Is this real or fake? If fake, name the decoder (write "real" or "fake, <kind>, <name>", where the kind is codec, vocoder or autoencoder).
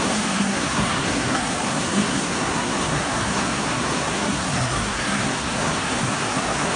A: fake, codec, SNAC